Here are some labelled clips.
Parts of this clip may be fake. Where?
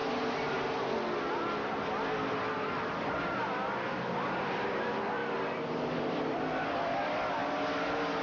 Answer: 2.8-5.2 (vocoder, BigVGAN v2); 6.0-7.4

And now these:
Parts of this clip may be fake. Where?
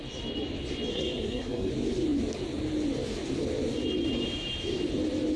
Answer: 0.9-1.7 (codec, SNAC)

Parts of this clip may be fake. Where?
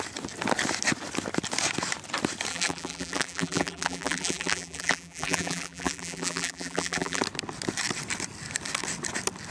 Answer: 2.5-7.2 (vocoder, BigVGAN v2)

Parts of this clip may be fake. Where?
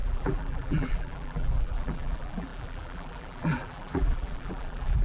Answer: 0.0-5.0 (vocoder, BigVGAN v2)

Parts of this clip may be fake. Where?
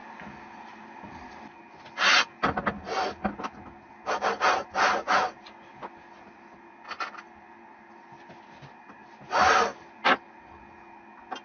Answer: none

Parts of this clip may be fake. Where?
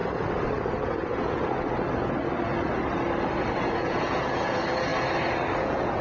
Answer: 3.6-4.9 (vocoder, Vocos); 5.6-6.0